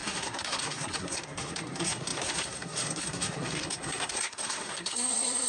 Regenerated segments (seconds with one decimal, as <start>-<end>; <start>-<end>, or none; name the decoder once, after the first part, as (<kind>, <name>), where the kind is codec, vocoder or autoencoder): 0.0-5.5 (codec, SNAC)